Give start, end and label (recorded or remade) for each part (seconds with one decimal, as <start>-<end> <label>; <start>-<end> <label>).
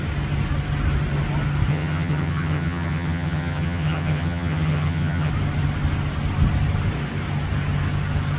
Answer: 0.0-1.7 recorded; 1.7-5.3 remade; 5.3-8.4 recorded